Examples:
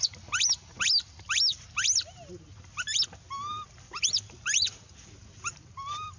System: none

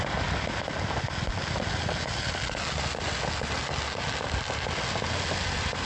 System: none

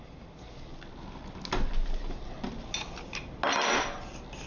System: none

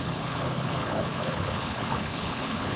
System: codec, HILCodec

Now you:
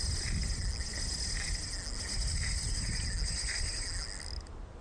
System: none